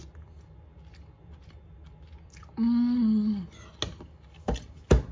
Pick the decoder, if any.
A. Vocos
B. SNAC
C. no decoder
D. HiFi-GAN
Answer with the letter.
C